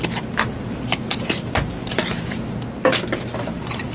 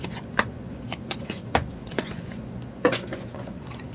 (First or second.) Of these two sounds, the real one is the first